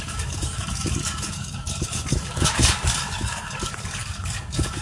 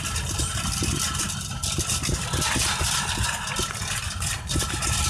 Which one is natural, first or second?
second